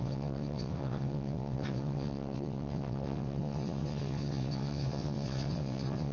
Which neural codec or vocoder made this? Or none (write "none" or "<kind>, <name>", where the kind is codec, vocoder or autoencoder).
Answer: vocoder, WaveNeXt